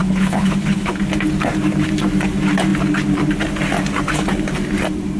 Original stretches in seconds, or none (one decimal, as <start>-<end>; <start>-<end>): 1.0-5.2